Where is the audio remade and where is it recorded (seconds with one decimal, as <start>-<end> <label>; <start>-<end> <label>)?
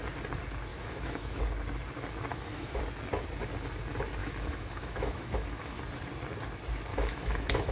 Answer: 0.0-0.7 recorded; 0.7-1.4 remade; 1.4-2.3 recorded; 2.3-2.8 remade; 2.8-4.2 recorded; 4.2-5.8 remade; 5.8-6.9 recorded; 6.9-7.7 remade